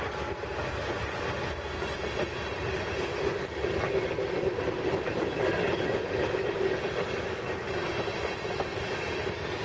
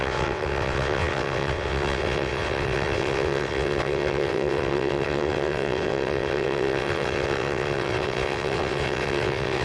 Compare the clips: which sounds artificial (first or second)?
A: second